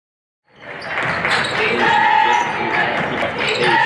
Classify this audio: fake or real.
real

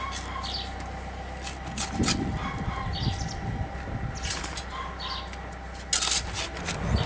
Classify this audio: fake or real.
real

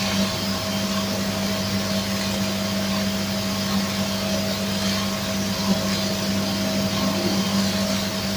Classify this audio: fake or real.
real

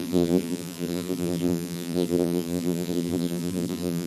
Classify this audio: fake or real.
fake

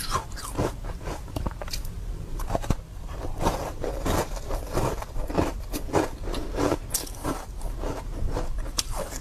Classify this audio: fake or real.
fake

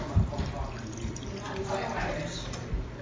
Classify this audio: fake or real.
real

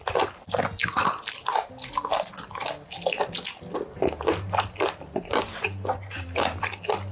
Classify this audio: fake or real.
real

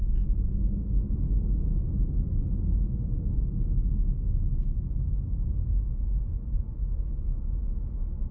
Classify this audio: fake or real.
real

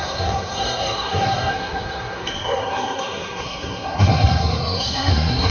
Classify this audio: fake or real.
fake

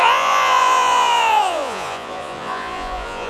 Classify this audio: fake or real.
fake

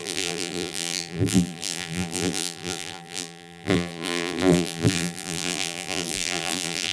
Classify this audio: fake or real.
fake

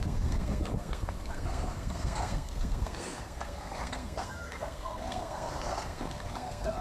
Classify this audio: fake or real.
fake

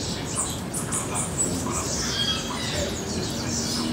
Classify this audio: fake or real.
real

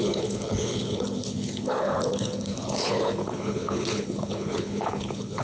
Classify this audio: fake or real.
fake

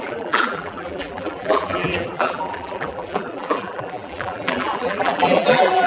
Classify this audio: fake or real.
fake